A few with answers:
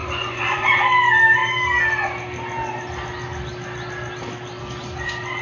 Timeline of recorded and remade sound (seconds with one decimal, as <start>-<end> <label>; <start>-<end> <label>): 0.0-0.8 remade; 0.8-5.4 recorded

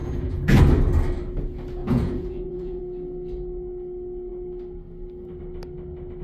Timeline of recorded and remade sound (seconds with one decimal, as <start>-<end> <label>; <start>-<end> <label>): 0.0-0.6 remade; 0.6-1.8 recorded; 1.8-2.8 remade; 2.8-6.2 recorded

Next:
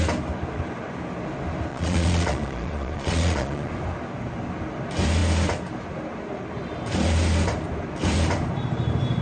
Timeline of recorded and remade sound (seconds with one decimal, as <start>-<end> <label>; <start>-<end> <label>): 0.0-1.7 recorded; 1.7-3.7 remade; 3.7-9.2 recorded

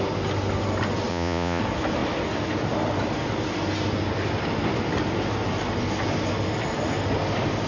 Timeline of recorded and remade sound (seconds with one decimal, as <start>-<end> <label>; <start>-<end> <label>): 0.0-1.1 recorded; 1.1-1.6 remade; 1.6-7.7 recorded